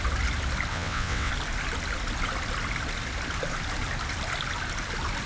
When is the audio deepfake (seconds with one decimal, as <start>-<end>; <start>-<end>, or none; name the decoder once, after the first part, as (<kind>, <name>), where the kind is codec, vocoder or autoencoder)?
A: 0.7-1.3 (vocoder, WaveNeXt)